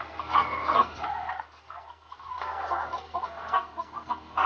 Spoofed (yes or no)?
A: yes